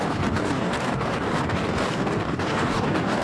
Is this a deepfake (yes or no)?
yes